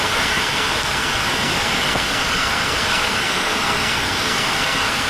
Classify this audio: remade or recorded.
remade